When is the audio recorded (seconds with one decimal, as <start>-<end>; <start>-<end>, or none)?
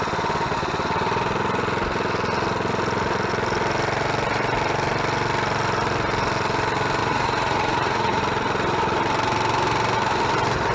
0.0-7.0; 8.2-10.7